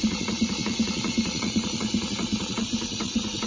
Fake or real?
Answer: fake